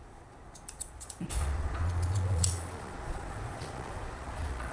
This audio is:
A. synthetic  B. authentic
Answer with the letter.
A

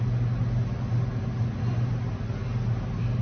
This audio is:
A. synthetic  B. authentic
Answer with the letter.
B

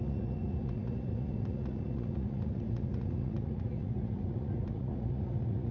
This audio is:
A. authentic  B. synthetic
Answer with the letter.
B